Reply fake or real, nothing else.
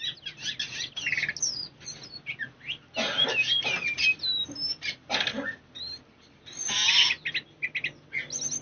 real